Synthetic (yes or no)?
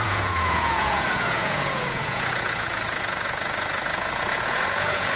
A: yes